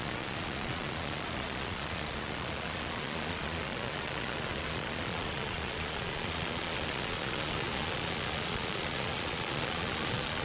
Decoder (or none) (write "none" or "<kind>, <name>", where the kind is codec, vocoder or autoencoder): vocoder, Vocos